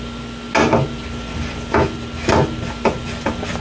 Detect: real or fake real